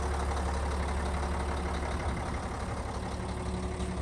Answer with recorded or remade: recorded